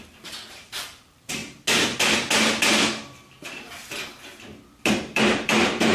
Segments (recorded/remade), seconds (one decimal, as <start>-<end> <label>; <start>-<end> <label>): 0.0-1.4 remade; 1.4-4.9 recorded; 4.9-5.9 remade